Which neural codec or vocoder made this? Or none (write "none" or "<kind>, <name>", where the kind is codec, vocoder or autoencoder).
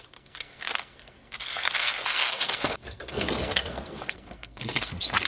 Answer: codec, SNAC